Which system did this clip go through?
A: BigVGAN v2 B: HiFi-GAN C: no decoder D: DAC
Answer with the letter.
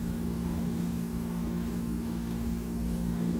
D